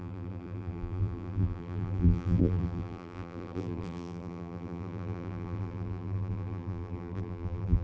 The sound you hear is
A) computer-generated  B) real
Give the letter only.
A